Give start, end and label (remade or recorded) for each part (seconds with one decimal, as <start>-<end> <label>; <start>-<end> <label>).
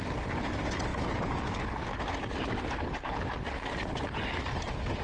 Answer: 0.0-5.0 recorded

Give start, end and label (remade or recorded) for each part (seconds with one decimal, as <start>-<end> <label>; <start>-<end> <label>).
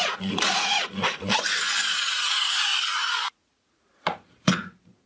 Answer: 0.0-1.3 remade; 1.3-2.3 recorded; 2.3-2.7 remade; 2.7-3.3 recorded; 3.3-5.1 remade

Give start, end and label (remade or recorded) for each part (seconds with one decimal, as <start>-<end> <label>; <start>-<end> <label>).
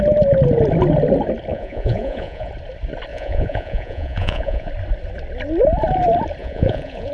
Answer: 0.0-1.5 recorded; 1.5-2.5 remade; 2.5-3.1 recorded; 3.1-4.7 remade; 4.7-6.4 recorded; 6.4-7.1 remade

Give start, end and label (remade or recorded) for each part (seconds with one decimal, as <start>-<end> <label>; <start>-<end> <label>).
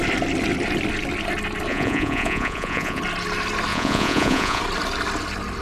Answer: 0.0-1.7 recorded; 1.7-3.0 remade; 3.0-3.7 recorded; 3.7-4.6 remade; 4.6-5.6 recorded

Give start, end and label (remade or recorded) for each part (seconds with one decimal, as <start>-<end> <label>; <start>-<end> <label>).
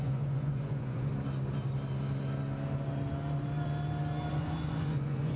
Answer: 0.0-1.1 remade; 1.1-4.3 recorded; 4.3-5.4 remade